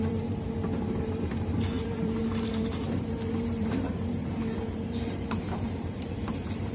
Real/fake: fake